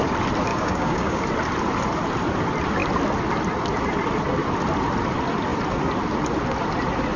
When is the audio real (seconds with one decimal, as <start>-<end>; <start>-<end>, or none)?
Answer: 0.0-0.5; 1.2-7.2